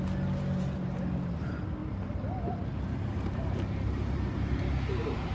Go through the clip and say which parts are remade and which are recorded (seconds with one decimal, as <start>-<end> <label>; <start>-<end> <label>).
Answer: 0.0-5.3 recorded